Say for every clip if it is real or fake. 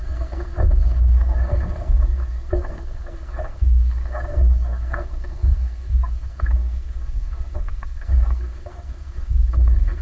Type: fake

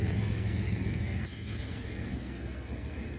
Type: fake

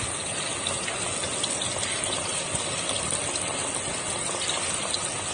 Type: real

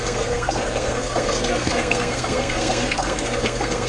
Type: fake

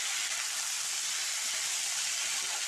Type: real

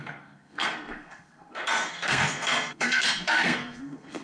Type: fake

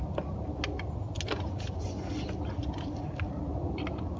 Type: real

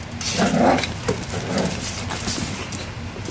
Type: real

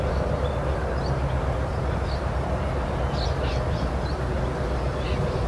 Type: real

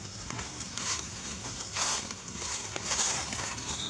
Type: fake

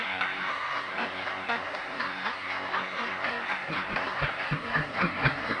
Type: fake